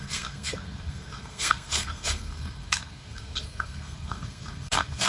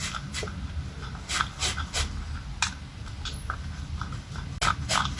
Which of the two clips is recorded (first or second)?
second